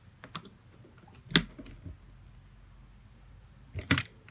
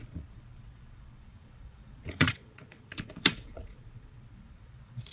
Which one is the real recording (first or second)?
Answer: first